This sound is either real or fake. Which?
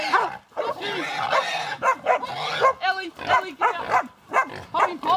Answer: real